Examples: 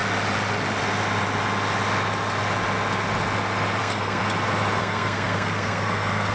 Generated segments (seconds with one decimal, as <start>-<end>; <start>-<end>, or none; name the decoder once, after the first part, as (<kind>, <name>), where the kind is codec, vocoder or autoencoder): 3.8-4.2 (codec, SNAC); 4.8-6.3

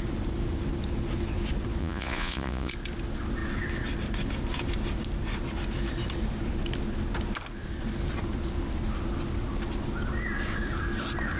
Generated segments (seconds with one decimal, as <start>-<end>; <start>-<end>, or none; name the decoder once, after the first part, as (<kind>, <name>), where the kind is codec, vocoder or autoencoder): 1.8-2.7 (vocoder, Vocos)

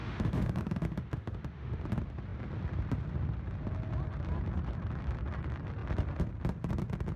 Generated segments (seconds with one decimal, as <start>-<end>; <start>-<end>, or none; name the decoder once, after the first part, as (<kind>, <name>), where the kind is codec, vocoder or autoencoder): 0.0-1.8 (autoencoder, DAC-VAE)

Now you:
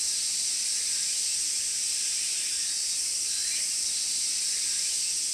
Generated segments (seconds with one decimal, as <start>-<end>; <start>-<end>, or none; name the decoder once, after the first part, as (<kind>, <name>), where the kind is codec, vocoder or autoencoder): 3.4-4.0 (vocoder, BigVGAN v2)